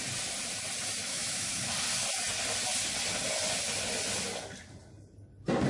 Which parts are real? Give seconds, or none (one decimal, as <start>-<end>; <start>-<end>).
0.0-1.1; 1.7-5.7